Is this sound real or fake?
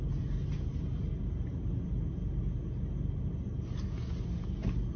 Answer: real